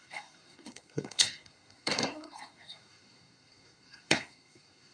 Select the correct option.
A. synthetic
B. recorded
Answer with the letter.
A